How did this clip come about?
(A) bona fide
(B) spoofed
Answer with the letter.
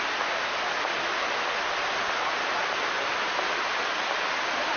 A